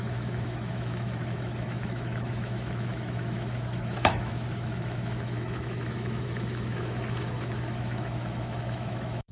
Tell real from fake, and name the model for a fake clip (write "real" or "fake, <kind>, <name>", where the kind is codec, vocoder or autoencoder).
fake, autoencoder, DAC-VAE